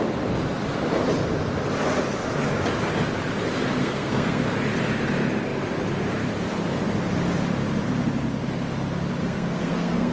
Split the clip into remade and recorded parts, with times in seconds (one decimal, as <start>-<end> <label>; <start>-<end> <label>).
0.0-3.8 recorded; 3.8-4.4 remade; 4.4-9.2 recorded; 9.2-10.1 remade